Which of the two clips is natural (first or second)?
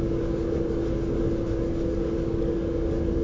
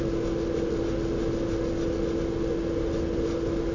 second